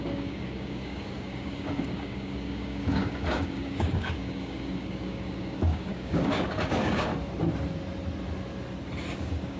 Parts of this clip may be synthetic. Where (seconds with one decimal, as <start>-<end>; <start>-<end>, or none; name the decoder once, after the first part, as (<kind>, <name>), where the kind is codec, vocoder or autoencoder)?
0.0-7.1 (codec, DAC); 9.2-9.6